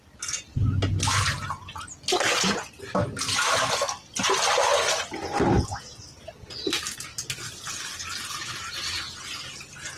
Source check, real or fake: real